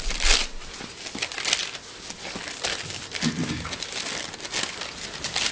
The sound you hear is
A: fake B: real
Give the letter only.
B